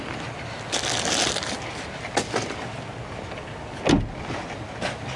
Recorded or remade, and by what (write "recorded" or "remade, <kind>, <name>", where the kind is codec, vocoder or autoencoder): recorded